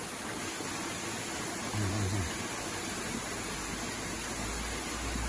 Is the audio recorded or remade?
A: recorded